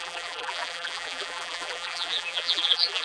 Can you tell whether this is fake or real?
fake